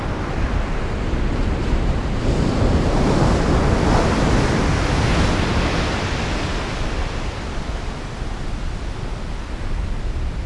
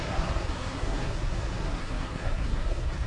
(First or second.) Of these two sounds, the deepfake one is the second